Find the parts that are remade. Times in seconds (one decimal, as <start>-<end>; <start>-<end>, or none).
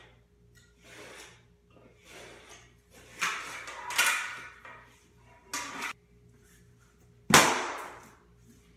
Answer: 7.4-8.2